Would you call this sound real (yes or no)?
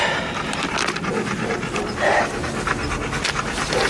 yes